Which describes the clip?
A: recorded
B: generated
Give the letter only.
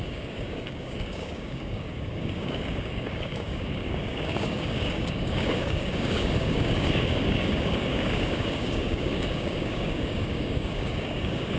B